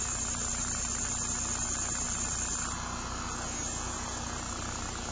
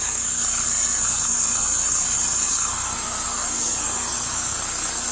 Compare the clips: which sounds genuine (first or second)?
first